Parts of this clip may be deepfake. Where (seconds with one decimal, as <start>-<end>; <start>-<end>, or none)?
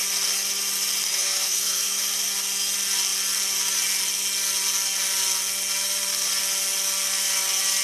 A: 1.1-2.0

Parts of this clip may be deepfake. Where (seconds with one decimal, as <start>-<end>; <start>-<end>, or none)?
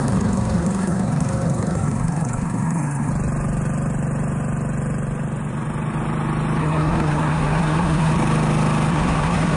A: 0.0-3.1; 6.6-8.1; 8.9-9.6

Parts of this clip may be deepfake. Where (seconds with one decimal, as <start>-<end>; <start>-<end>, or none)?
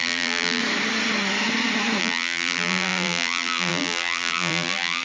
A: 0.0-0.6; 2.0-5.0